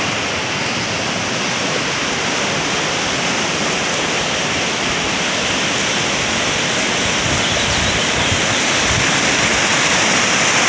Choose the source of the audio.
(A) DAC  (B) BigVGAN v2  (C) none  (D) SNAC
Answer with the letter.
C